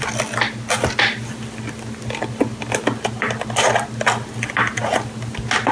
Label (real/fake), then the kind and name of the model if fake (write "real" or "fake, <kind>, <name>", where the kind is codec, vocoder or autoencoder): real